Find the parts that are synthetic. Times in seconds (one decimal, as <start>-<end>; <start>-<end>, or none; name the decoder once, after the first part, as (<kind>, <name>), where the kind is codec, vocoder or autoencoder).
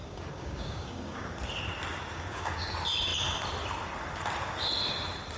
0.0-1.3 (codec, DAC); 2.1-2.7